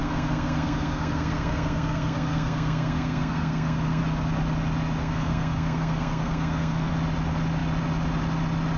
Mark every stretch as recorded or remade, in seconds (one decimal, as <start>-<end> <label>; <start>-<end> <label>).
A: 0.0-4.0 remade; 4.0-5.0 recorded; 5.0-6.9 remade; 6.9-8.8 recorded